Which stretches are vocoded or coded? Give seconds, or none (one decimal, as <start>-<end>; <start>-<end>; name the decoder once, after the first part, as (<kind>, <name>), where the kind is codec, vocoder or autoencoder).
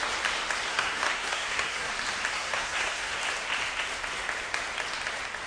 0.7-1.9 (codec, SNAC); 2.3-3.2